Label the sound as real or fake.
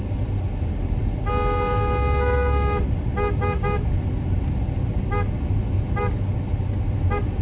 real